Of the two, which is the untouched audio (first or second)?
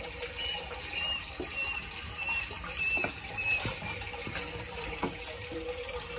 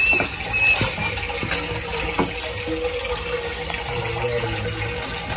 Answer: second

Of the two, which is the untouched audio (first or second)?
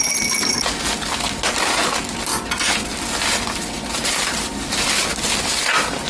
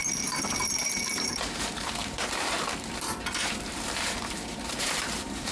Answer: first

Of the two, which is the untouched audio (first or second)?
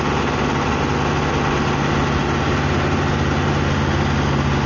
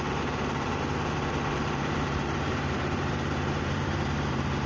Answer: first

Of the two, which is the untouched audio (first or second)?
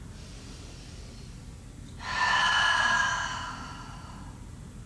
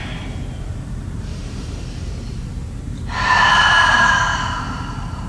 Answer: first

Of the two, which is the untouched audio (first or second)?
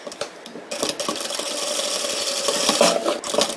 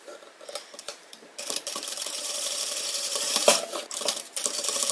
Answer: first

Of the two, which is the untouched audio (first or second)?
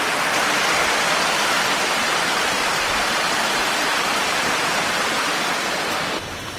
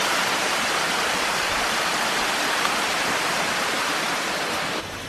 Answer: first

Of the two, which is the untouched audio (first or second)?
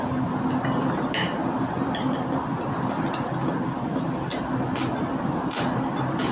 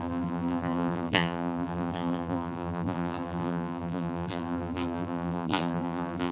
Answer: first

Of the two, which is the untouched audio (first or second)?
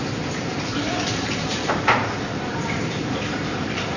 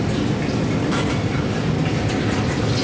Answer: second